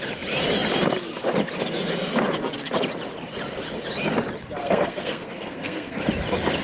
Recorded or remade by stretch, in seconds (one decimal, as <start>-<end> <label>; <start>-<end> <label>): 0.0-4.6 recorded; 4.6-6.0 remade; 6.0-6.6 recorded